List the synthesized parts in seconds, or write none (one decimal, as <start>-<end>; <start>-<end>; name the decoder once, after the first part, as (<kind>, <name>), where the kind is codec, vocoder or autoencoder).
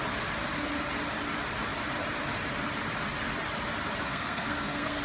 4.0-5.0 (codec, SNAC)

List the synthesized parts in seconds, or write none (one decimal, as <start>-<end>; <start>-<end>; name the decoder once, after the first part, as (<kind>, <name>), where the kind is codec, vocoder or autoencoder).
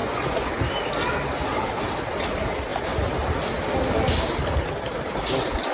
0.0-0.5 (vocoder, Vocos)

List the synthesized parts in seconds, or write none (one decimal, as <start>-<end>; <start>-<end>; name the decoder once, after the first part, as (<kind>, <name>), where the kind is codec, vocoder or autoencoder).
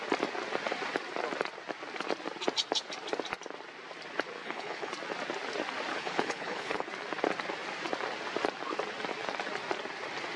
4.4-4.9 (codec, HILCodec); 5.9-6.9